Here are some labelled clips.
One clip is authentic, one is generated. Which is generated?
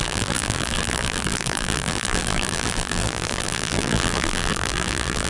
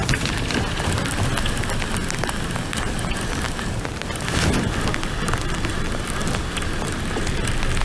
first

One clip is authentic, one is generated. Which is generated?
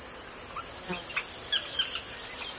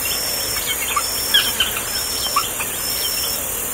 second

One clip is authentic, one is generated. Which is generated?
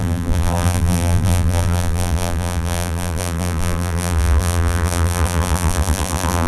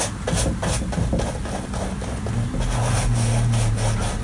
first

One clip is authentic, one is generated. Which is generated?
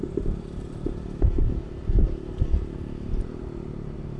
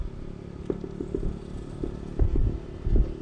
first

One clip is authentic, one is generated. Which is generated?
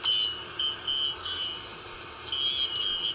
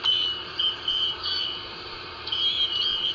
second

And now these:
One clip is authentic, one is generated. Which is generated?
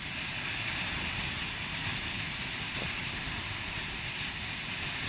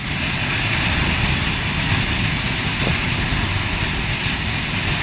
first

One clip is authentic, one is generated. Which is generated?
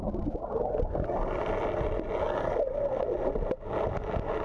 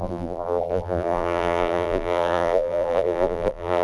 second